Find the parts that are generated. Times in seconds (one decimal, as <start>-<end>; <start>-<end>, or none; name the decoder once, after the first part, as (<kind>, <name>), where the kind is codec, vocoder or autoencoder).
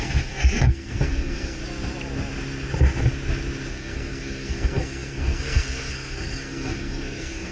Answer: 0.0-1.6 (codec, SNAC); 3.7-7.5